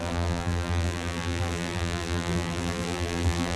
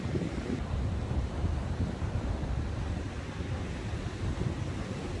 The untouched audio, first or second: second